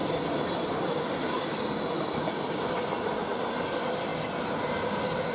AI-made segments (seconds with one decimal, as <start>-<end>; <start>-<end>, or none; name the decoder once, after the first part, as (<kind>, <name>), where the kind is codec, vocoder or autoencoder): none